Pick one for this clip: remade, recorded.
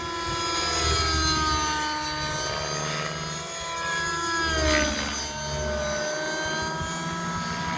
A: recorded